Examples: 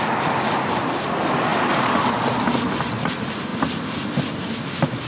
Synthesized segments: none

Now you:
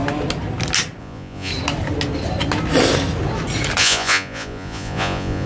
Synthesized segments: 1.0-1.5 (vocoder, Vocos); 3.8-5.5